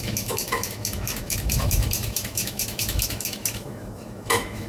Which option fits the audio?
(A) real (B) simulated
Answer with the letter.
B